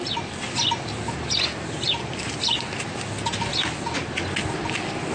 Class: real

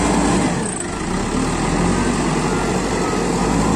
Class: real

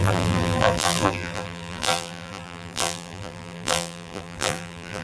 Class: fake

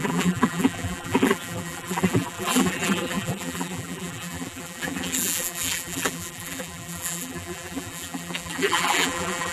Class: fake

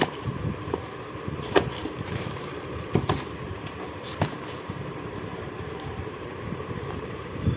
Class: fake